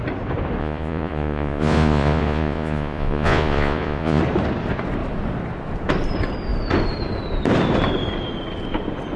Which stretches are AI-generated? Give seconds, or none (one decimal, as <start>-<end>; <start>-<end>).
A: 0.6-4.2